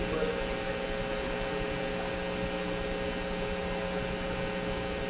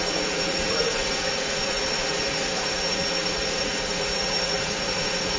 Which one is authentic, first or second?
first